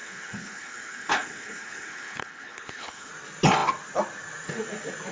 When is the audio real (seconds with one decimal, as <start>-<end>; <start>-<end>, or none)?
3.1-5.1

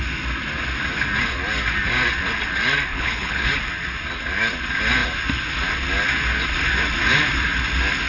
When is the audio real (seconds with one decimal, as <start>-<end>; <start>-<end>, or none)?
0.0-2.9; 3.5-8.1

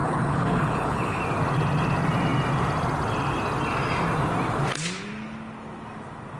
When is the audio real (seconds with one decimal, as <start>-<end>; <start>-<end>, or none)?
1.2-6.4

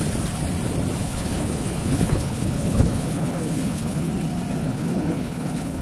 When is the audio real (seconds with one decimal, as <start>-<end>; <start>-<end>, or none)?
0.0-1.0; 4.1-4.6